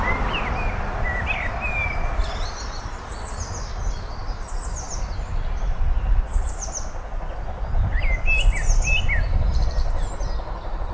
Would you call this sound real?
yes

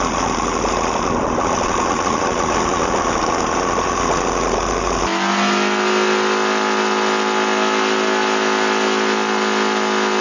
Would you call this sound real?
yes